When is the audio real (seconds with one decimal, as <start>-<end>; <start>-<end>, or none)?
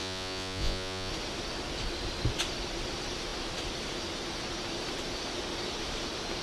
1.1-6.4